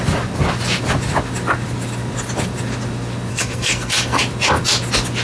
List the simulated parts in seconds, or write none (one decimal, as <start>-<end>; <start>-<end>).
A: 3.3-4.2